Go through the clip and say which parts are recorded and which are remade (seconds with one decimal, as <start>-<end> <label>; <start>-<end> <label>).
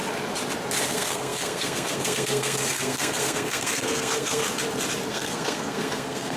0.0-0.8 recorded; 0.8-4.4 remade; 4.4-5.1 recorded; 5.1-6.4 remade